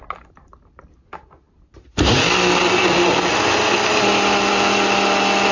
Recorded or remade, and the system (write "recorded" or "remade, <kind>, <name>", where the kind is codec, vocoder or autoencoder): recorded